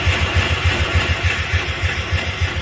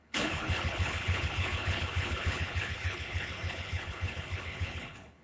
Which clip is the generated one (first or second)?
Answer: second